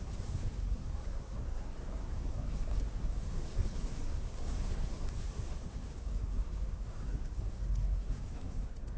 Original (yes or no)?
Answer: no